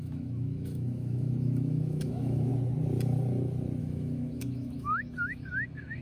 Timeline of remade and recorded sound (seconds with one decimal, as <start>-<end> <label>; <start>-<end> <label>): 0.0-2.5 remade; 2.5-3.8 recorded; 3.8-6.0 remade